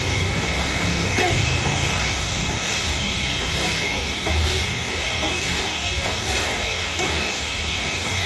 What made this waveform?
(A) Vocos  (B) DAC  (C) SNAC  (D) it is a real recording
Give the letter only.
B